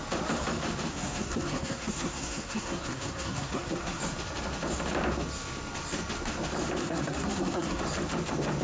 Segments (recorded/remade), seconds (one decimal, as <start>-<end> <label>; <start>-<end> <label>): 0.0-0.9 recorded; 0.9-4.0 remade; 4.0-6.8 recorded; 6.8-7.8 remade; 7.8-8.6 recorded